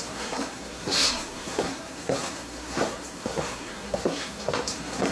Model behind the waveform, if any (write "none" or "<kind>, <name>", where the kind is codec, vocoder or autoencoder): codec, SNAC